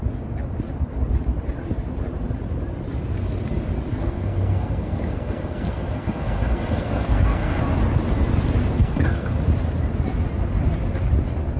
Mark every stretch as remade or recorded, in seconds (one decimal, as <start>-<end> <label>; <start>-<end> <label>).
0.0-3.9 recorded; 3.9-7.6 remade; 7.6-8.8 recorded; 8.8-9.4 remade; 9.4-11.6 recorded